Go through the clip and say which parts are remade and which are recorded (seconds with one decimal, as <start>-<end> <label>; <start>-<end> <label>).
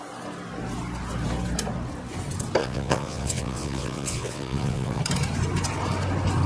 0.0-2.6 recorded; 2.6-5.0 remade; 5.0-6.5 recorded